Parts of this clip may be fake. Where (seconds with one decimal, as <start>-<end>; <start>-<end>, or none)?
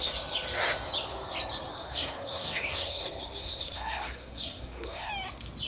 1.7-5.1